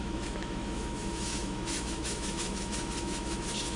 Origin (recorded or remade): remade